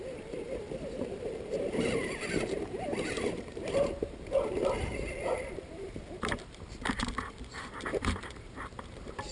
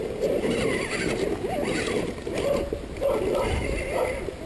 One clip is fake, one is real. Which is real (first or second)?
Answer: second